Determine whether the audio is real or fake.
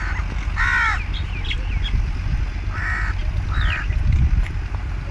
real